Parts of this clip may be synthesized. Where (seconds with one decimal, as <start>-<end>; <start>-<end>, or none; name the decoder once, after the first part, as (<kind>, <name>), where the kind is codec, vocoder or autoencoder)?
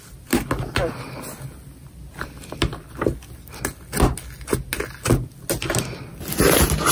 none